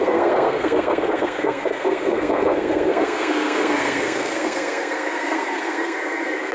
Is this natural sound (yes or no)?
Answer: no